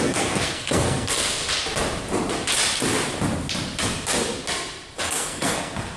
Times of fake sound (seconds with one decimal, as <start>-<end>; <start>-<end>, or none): 0.0-1.4; 5.0-6.0

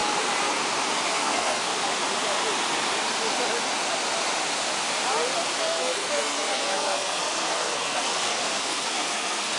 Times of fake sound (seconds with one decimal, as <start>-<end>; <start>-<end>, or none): 1.1-1.7; 5.6-9.6

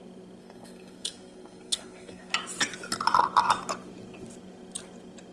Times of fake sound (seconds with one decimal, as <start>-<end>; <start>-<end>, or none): 0.4-2.3

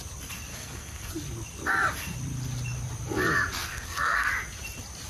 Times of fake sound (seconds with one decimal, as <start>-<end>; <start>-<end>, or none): 0.5-1.1; 3.6-4.3

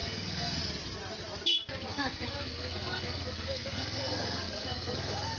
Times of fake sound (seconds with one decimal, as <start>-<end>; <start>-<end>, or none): 0.0-0.6; 1.9-5.4

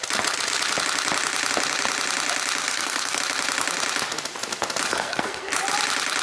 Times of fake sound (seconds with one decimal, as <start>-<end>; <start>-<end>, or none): 2.6-3.2; 4.9-5.5

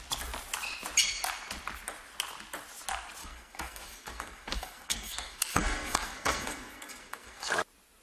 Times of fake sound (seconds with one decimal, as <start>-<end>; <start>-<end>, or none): 3.2-7.5